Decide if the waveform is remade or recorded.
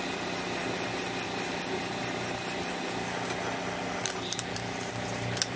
recorded